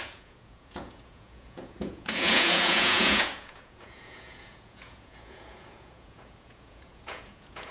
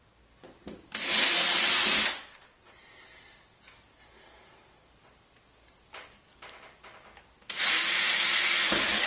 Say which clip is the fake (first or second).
first